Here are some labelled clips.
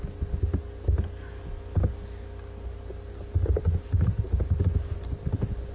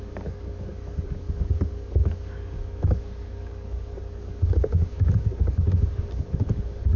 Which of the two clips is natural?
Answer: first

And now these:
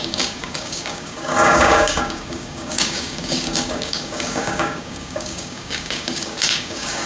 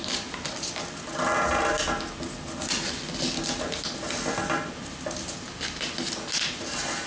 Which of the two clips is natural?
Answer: second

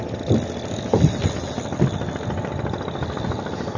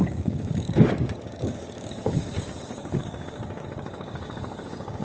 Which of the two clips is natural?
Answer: first